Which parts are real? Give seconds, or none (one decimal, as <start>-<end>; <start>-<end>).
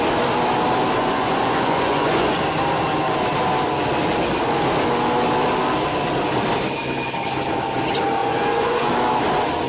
0.0-1.0; 2.4-8.2; 8.9-9.7